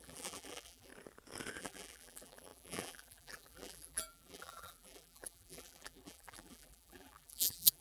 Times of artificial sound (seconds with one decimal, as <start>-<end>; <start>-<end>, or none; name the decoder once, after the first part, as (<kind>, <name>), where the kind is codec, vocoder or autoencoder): 0.0-0.9 (vocoder, BigVGAN v2); 1.6-7.8

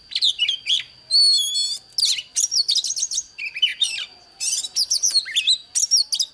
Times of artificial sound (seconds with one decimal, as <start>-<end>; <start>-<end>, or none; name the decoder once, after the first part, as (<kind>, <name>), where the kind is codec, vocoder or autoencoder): none

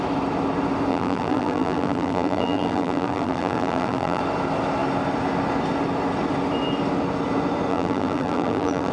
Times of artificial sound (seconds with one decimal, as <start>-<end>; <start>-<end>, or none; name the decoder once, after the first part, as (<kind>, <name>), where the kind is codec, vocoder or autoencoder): 0.9-4.2 (vocoder, BigVGAN v2); 7.7-8.9

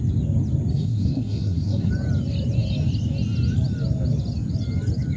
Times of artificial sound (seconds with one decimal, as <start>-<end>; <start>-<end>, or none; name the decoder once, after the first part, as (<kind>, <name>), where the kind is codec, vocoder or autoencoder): 0.7-1.9 (codec, SNAC)

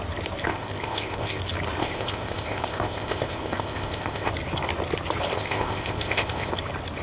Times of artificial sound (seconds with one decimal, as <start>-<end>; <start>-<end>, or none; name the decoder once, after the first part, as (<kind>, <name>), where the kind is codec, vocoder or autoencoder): 0.5-1.4 (codec, ZipCodec); 1.8-4.3; 5.3-6.5

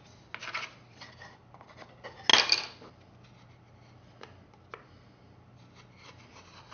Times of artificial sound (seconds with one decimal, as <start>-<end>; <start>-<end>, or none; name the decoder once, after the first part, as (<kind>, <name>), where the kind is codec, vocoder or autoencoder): none

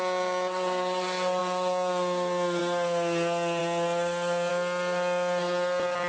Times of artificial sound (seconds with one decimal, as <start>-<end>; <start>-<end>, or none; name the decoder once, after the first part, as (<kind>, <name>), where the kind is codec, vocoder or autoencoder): none